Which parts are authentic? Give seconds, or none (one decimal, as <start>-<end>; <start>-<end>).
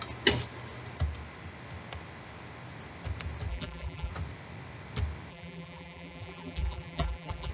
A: 0.0-3.5; 4.1-5.3